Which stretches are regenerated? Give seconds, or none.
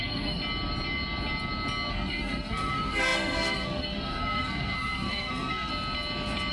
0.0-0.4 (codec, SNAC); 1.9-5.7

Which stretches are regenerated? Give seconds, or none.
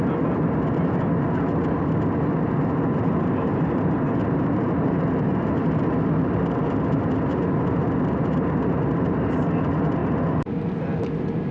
none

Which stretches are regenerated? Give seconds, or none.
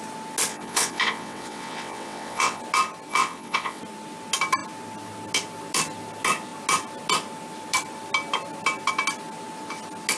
0.5-2.6 (vocoder, WaveNeXt); 3.1-3.8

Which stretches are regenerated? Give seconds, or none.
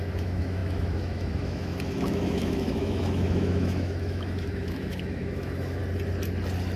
0.0-5.8 (autoencoder, DAC-VAE)